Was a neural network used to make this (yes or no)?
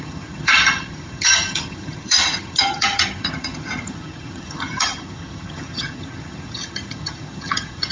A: yes